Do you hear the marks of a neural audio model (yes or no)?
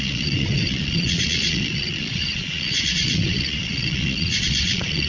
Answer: yes